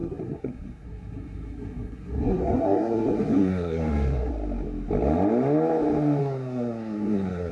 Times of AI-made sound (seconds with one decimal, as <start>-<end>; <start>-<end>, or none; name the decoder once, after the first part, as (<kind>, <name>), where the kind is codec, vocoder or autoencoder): 0.0-4.3 (codec, SNAC); 6.2-7.5